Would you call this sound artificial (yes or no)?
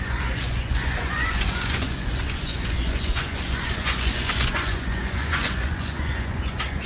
yes